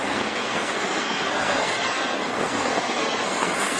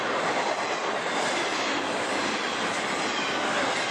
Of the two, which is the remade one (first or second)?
first